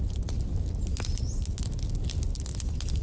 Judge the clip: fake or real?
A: real